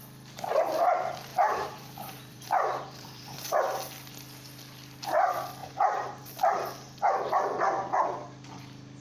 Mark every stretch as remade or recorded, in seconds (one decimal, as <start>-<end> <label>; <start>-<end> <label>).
0.0-1.3 recorded; 1.3-3.6 remade; 3.6-5.6 recorded; 5.6-6.4 remade; 6.4-9.0 recorded